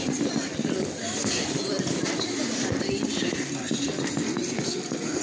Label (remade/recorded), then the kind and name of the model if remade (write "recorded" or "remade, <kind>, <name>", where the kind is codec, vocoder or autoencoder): recorded